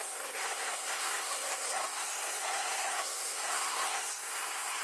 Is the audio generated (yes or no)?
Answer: yes